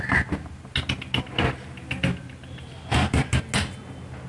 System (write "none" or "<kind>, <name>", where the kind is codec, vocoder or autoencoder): none